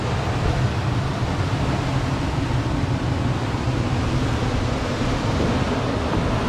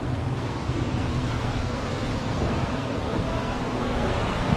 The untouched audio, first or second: first